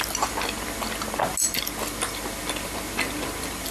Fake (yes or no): no